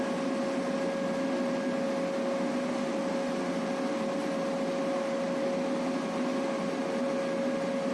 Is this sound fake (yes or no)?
no